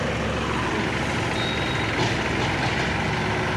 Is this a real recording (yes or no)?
yes